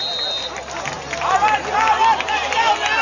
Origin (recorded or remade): recorded